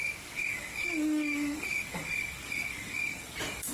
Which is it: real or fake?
fake